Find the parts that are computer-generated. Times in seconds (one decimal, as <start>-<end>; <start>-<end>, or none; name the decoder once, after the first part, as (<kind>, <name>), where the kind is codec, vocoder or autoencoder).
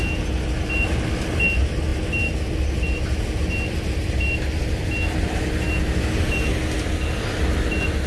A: none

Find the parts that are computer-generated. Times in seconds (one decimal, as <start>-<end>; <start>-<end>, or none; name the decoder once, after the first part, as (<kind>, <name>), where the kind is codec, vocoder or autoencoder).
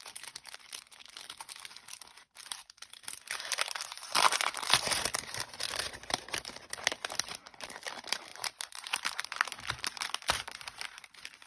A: 0.0-1.0 (vocoder, BigVGAN v2); 3.5-11.5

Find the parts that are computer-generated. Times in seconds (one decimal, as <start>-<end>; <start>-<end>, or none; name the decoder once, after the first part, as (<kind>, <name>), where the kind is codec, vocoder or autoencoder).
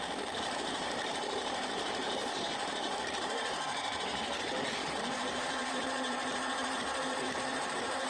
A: 0.0-8.1 (vocoder, BigVGAN v2)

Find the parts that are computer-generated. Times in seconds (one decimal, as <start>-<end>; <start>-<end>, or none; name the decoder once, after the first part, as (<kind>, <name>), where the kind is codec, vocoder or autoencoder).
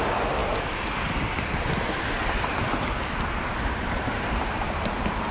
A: 0.0-0.4 (vocoder, BigVGAN v2); 3.6-5.3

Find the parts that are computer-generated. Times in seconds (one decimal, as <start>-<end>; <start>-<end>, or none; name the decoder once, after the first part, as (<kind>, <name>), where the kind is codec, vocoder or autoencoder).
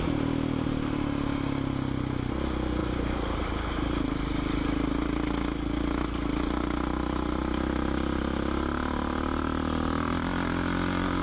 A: 2.8-4.1 (vocoder, BigVGAN v2)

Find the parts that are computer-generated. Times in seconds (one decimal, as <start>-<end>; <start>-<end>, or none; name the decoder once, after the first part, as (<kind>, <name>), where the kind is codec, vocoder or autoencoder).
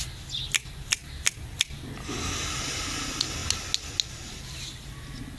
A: none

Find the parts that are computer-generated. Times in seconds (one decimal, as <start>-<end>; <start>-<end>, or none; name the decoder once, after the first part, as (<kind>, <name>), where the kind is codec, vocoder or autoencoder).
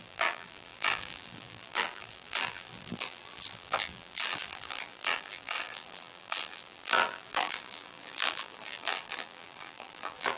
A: 0.0-10.4 (vocoder, BigVGAN v2)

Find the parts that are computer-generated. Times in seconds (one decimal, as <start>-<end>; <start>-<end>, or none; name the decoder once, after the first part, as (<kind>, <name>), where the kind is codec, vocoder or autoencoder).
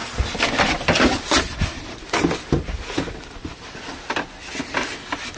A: none